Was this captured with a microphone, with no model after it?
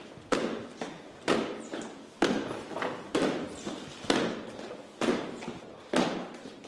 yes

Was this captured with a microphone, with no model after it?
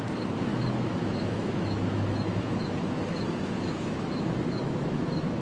no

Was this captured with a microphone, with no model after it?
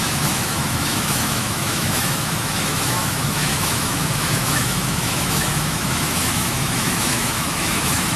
no